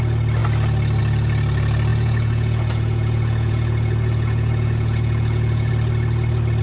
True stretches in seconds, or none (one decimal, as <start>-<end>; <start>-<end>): 0.0-1.9; 5.7-6.6

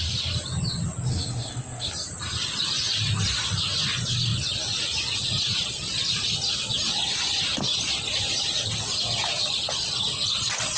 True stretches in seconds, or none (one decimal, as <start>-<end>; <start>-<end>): 0.0-1.1; 1.9-10.8

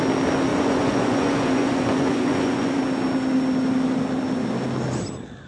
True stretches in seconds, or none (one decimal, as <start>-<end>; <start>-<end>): 0.0-0.5; 2.8-5.5

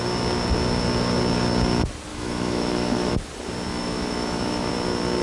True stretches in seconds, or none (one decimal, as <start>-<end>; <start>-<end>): 0.0-2.1; 3.1-3.7; 4.7-5.2

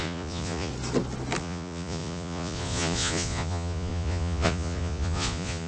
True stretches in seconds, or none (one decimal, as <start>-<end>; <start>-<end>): 0.7-1.4

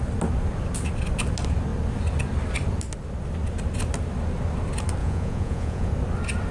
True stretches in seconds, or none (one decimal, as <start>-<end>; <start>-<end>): 0.0-5.0; 5.9-6.5

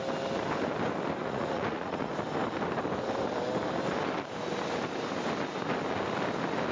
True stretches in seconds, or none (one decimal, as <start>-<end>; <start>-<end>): 0.0-1.2; 2.1-6.7